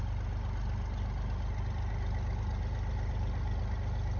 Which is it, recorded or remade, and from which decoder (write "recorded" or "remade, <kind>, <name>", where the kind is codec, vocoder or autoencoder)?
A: recorded